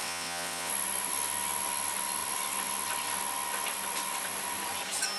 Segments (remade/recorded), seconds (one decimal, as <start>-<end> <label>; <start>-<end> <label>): 0.0-0.7 remade; 0.7-5.2 recorded

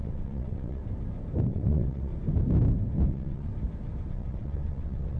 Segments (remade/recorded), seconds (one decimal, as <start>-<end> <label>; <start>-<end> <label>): 0.0-0.8 remade; 0.8-1.5 recorded; 1.5-2.1 remade; 2.1-3.1 recorded; 3.1-3.5 remade; 3.5-4.1 recorded; 4.1-5.2 remade